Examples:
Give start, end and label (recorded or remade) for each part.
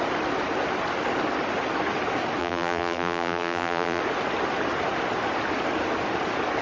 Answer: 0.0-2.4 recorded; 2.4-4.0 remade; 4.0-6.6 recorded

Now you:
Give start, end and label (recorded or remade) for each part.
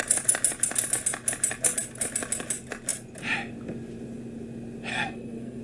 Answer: 0.0-4.9 recorded; 4.9-5.6 remade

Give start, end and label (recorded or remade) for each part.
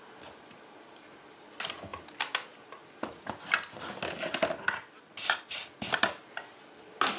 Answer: 0.0-7.2 recorded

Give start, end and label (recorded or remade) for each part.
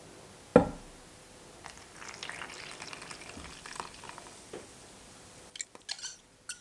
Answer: 0.0-6.6 recorded